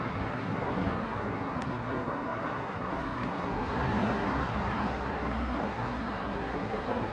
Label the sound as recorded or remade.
remade